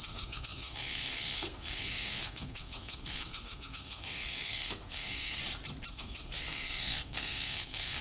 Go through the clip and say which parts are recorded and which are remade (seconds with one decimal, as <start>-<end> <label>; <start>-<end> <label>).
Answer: 0.0-5.4 remade; 5.4-5.9 recorded; 5.9-8.0 remade